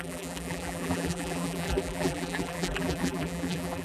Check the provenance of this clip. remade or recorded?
remade